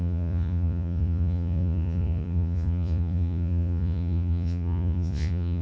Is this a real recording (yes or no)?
no